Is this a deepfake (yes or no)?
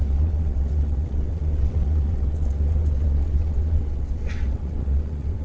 yes